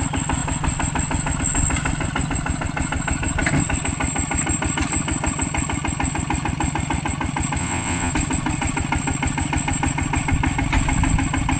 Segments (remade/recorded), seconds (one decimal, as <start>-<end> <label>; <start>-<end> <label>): 0.0-7.6 recorded; 7.6-8.1 remade; 8.1-11.6 recorded